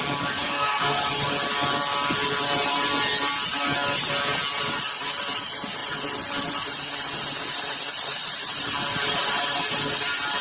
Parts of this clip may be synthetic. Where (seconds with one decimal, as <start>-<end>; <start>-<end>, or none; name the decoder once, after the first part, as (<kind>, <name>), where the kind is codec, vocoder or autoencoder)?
0.4-1.0 (codec, SNAC)